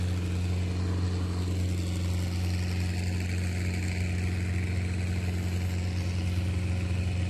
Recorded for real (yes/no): yes